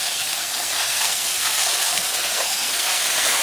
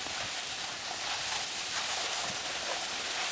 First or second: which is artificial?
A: first